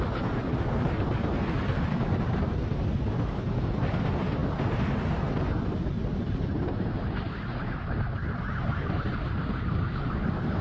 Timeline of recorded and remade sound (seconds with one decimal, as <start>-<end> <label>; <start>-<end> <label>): 0.0-10.6 recorded